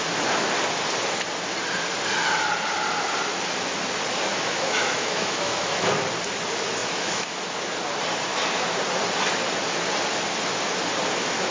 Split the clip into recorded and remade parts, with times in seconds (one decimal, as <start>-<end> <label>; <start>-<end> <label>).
0.0-4.3 recorded; 4.3-5.8 remade; 5.8-6.8 recorded; 6.8-7.4 remade; 7.4-8.3 recorded; 8.3-8.8 remade; 8.8-11.5 recorded